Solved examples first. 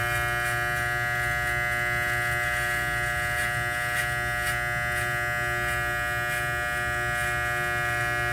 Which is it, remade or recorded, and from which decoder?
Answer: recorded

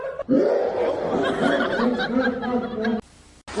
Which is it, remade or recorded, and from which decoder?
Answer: recorded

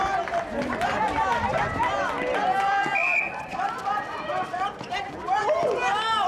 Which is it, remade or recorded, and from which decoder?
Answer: recorded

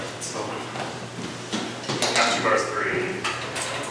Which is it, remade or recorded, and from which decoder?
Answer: recorded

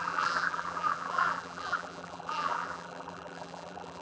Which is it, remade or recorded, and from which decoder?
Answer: remade, vocoder, BigVGAN v2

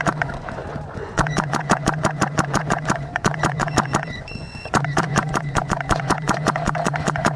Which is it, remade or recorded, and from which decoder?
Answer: remade, vocoder, Vocos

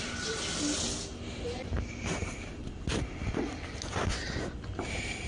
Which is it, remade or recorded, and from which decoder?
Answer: recorded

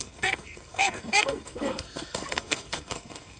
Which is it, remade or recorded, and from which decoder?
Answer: remade, codec, SNAC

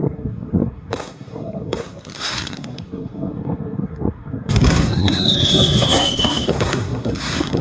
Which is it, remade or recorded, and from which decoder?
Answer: remade, codec, SNAC